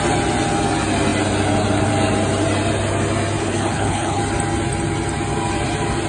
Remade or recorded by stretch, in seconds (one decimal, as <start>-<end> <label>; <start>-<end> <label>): 0.0-3.4 recorded; 3.4-4.2 remade; 4.2-6.1 recorded